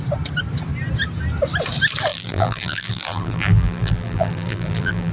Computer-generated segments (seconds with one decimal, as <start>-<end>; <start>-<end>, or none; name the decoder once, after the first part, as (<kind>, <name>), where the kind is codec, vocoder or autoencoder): 2.1-5.1 (vocoder, BigVGAN v2)

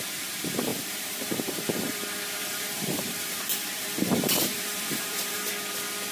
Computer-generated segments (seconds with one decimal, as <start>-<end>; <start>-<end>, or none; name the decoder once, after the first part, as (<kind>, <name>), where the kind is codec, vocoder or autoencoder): 0.7-2.0 (vocoder, BigVGAN v2); 2.4-5.5

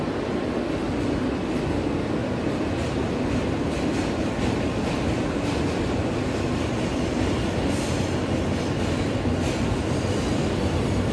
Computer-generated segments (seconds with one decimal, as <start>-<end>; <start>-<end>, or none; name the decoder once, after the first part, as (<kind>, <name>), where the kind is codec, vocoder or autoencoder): none